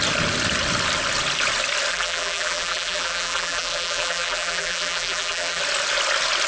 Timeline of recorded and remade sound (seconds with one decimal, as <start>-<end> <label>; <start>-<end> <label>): 0.0-1.9 recorded; 1.9-5.6 remade; 5.6-6.5 recorded